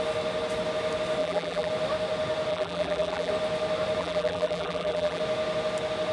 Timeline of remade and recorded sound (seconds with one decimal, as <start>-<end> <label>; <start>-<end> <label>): 0.0-1.2 recorded; 1.2-1.7 remade; 1.7-2.5 recorded; 2.5-3.3 remade; 3.3-4.0 recorded; 4.0-5.2 remade; 5.2-6.1 recorded